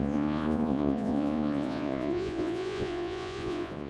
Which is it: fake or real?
fake